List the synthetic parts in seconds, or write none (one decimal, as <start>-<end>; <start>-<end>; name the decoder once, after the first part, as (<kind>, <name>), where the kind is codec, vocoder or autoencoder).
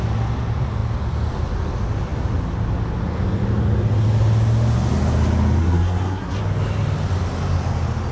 5.6-6.4 (codec, SNAC)